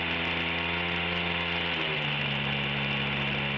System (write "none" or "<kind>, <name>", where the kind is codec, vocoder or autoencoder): none